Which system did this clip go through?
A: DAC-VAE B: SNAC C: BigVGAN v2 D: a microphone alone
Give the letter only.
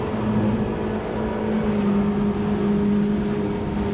D